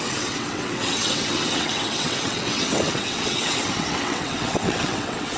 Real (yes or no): no